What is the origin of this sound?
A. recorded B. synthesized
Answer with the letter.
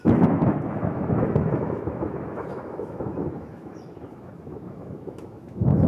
B